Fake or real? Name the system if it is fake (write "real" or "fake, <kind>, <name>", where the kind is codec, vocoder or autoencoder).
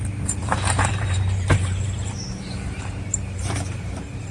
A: fake, vocoder, BigVGAN v2